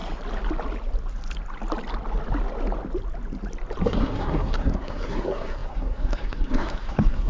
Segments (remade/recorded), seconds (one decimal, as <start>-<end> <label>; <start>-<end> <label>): 0.0-3.8 recorded; 3.8-7.3 remade